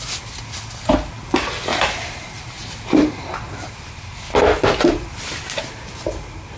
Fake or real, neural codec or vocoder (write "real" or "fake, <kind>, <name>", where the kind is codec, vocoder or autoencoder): real